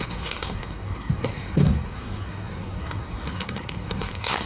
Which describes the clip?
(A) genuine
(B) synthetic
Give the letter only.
B